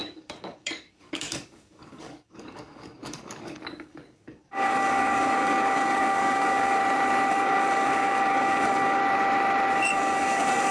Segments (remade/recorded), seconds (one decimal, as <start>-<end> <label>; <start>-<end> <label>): 0.0-6.8 remade; 6.8-7.3 recorded; 7.3-9.0 remade; 9.0-9.9 recorded; 9.9-10.7 remade